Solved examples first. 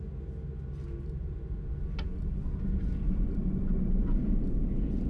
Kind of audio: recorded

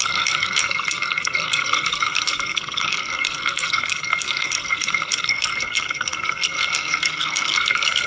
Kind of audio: remade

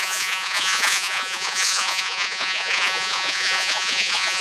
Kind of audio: remade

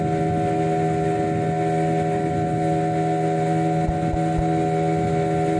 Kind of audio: recorded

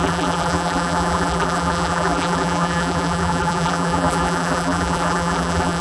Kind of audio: remade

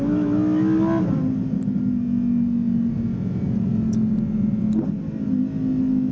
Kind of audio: recorded